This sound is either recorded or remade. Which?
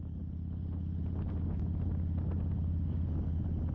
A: recorded